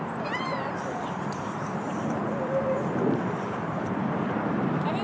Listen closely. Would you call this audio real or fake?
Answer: fake